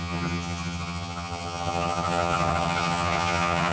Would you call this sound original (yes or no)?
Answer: no